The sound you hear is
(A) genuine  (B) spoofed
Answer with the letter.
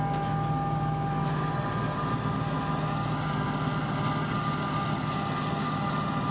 A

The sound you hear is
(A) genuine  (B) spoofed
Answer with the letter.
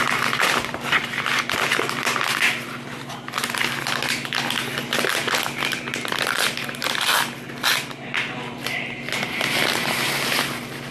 A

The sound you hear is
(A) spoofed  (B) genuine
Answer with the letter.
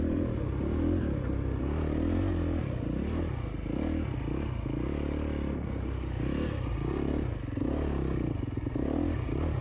B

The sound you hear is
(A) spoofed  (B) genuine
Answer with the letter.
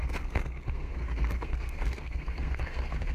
A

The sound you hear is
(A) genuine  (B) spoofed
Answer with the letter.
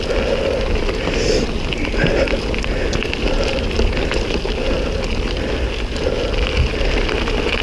A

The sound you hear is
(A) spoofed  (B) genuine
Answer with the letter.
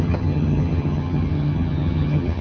A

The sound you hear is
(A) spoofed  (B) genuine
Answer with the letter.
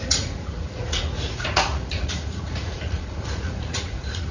A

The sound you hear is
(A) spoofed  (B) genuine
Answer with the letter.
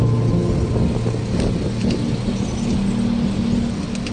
B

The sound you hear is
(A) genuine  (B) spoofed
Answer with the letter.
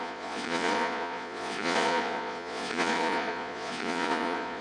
B